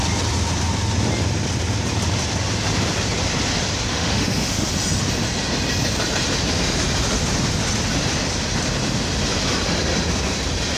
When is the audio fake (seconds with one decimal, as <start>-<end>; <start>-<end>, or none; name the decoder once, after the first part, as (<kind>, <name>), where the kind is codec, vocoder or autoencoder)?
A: 3.9-4.7 (autoencoder, DAC-VAE)